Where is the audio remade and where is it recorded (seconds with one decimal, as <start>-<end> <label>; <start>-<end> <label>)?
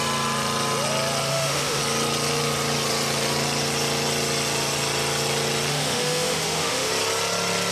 0.0-1.3 recorded; 1.3-1.8 remade; 1.8-5.7 recorded; 5.7-6.9 remade; 6.9-7.7 recorded